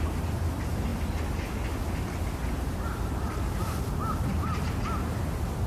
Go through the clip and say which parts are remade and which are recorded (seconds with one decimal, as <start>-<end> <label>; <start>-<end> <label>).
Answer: 0.0-5.7 recorded